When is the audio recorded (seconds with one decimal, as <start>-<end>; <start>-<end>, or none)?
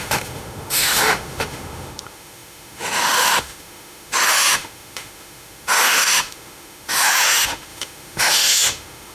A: none